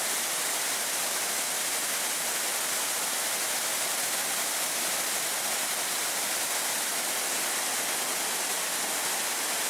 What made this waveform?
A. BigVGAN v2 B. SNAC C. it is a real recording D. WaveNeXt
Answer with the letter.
C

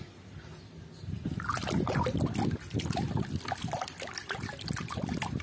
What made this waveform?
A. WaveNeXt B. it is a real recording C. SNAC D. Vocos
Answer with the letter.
B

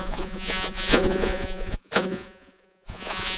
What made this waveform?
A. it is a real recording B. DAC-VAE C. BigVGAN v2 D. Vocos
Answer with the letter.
D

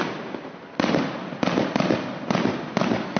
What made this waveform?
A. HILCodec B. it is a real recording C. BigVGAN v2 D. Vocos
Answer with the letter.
B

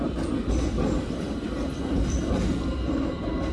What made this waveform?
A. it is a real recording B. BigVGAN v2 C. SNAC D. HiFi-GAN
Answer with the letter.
A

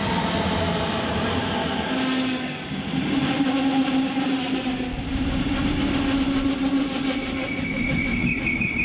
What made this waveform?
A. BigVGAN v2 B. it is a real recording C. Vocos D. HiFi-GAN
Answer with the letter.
B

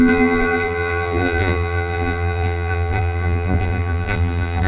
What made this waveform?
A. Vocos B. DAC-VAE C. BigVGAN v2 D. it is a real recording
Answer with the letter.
C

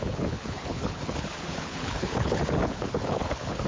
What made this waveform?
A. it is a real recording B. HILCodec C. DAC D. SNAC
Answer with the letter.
B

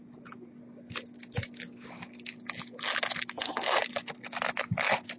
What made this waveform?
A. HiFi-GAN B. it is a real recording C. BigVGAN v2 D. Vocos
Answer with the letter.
B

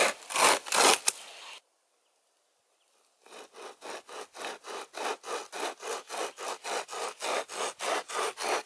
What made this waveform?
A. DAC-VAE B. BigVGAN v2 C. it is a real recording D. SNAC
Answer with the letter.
C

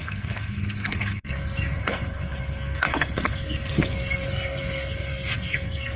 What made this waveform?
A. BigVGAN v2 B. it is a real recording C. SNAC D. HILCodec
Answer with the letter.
C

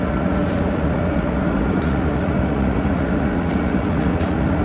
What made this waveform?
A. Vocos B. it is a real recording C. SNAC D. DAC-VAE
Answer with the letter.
A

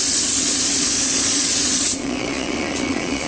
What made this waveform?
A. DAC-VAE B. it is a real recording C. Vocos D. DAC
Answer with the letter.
C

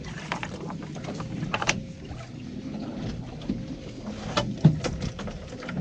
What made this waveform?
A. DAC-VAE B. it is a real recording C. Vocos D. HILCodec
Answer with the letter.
B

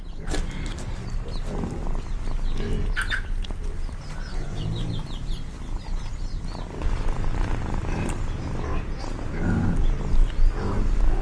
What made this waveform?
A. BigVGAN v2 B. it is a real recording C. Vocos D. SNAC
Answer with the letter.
B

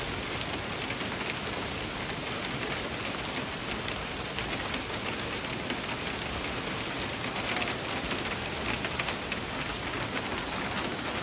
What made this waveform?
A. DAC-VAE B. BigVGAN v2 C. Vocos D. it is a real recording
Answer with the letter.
D